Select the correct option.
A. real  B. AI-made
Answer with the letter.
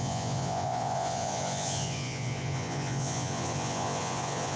B